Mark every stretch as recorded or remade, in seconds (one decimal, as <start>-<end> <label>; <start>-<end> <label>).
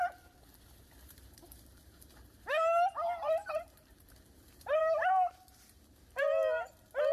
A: 0.0-0.5 recorded; 0.5-4.8 remade; 4.8-7.1 recorded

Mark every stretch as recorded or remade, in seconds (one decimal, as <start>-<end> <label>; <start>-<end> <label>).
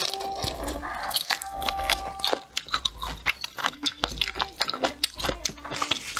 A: 0.0-1.0 recorded; 1.0-2.0 remade; 2.0-3.6 recorded; 3.6-4.1 remade; 4.1-6.2 recorded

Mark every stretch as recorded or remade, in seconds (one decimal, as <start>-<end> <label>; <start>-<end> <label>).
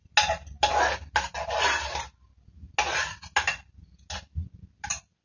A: 0.0-5.2 recorded